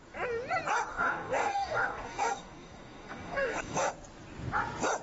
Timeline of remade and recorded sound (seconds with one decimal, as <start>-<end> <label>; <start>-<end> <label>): 0.0-0.9 recorded; 0.9-3.9 remade; 3.9-5.0 recorded